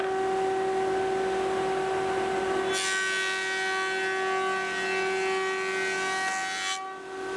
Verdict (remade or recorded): recorded